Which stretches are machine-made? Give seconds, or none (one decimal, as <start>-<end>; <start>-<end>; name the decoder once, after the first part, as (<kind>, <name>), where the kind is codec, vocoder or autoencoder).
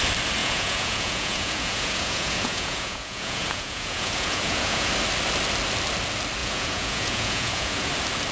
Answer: 0.4-4.9 (vocoder, Vocos); 6.4-7.9